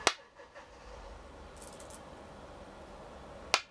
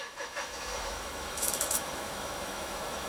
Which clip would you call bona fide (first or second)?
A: first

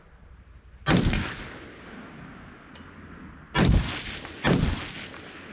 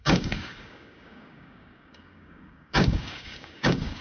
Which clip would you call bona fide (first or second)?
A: first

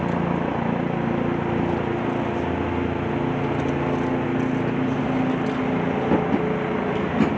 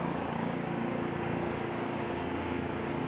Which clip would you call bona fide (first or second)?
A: first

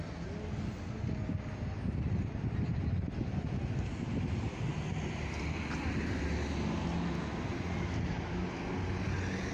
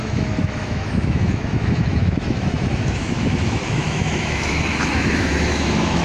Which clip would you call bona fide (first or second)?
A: first